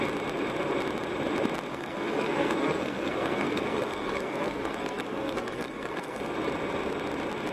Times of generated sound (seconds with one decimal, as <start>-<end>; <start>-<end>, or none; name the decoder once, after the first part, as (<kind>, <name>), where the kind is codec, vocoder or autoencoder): 1.7-6.2 (codec, SNAC)

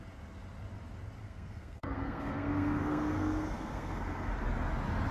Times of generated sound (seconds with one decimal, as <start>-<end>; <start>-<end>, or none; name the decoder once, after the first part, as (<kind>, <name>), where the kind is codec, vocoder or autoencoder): 1.2-4.3 (codec, SNAC)

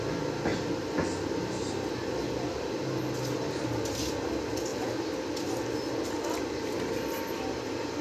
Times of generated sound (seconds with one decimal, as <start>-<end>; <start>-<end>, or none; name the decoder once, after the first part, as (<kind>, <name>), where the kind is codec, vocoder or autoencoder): none

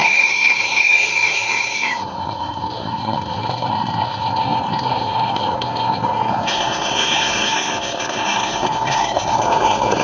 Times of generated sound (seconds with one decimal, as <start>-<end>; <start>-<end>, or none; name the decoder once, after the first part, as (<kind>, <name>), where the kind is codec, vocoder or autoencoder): 0.0-10.0 (codec, SNAC)

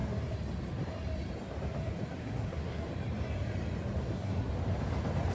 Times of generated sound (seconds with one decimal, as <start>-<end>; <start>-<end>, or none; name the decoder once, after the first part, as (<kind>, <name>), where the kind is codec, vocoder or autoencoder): 2.2-2.9 (codec, SNAC); 4.0-4.5

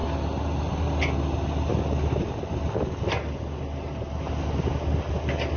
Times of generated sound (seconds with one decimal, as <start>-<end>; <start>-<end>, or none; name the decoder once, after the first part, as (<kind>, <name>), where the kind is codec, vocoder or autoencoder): none